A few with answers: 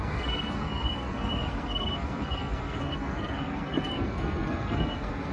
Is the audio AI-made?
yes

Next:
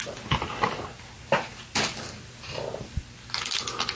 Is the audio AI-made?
no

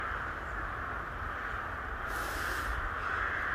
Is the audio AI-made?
no